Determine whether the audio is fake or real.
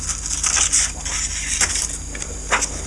real